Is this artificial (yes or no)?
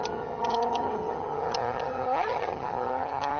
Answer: yes